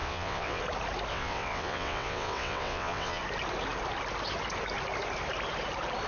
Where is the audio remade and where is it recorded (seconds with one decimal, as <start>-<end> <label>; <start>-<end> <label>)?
0.0-0.6 remade; 0.6-1.1 recorded; 1.1-3.2 remade; 3.2-6.1 recorded